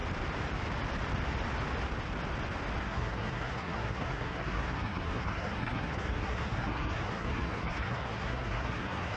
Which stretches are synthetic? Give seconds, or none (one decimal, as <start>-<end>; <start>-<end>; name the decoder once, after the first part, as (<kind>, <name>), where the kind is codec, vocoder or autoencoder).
2.8-9.2 (codec, SNAC)

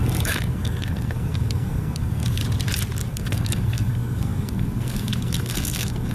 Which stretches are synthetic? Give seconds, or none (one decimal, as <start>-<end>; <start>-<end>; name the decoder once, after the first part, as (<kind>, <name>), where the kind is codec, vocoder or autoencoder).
0.0-2.4 (codec, SNAC); 3.1-6.1

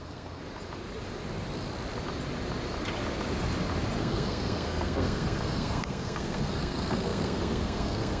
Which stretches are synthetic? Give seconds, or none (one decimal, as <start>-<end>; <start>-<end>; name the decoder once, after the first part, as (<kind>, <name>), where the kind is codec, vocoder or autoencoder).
0.0-0.4 (codec, SNAC); 4.0-8.2

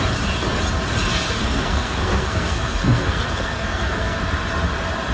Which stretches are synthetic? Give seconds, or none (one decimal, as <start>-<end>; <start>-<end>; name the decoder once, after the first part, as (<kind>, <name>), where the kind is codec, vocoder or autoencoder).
1.4-4.2 (codec, SNAC)

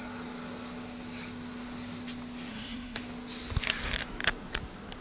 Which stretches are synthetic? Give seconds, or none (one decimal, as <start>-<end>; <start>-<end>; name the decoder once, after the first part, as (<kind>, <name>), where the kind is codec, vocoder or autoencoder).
2.5-3.0 (codec, SNAC)

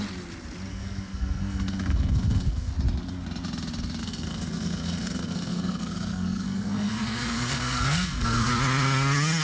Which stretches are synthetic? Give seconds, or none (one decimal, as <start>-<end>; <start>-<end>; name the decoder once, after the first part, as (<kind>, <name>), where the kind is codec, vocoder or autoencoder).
0.7-2.7 (codec, SNAC); 4.0-8.5